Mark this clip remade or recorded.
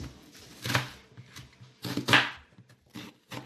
recorded